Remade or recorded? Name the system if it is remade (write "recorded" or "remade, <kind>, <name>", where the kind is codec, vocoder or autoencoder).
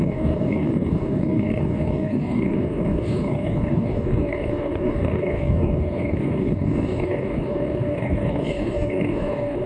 remade, codec, DAC